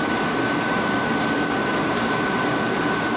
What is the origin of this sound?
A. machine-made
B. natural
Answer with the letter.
A